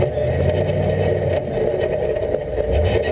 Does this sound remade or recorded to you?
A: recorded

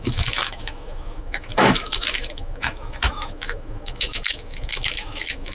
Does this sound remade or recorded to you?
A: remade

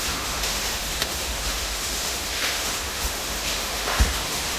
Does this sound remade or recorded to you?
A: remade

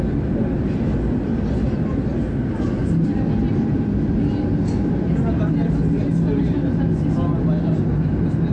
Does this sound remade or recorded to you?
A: recorded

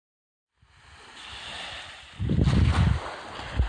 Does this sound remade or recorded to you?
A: recorded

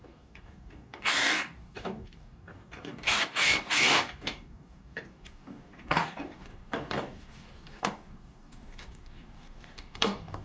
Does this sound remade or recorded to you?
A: remade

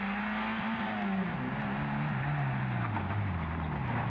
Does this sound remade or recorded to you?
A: recorded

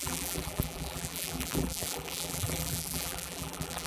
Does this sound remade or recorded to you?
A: remade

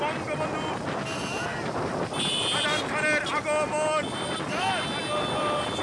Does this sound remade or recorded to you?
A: recorded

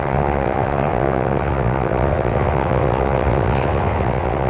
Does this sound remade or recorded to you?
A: remade